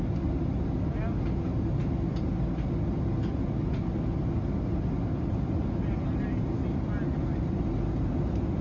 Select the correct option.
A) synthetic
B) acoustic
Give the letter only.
B